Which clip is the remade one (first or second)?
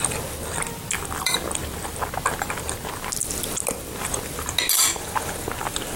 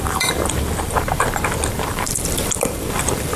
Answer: second